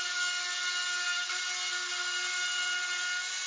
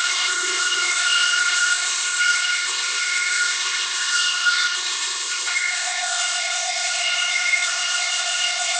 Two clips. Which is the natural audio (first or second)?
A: first